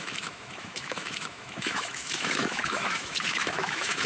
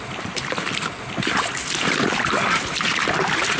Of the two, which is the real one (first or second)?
second